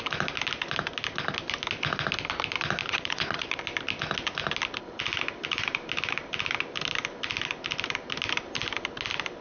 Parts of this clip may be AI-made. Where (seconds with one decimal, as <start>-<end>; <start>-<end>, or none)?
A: 2.8-3.6